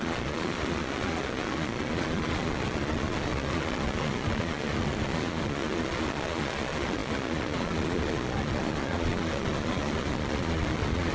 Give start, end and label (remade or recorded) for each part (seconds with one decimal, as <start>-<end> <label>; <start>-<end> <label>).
0.0-11.1 remade